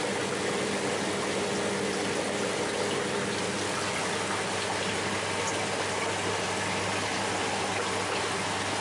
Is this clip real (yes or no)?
yes